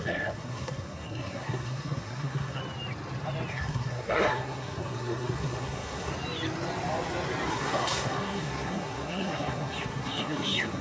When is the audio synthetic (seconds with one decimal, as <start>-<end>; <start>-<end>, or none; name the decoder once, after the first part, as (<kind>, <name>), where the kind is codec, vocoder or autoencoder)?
0.0-2.6 (codec, SNAC); 3.5-6.1; 7.5-10.8